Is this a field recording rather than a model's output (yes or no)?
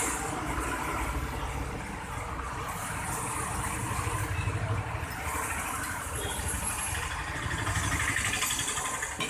yes